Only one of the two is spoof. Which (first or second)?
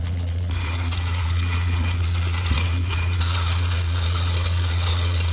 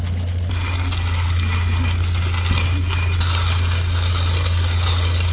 first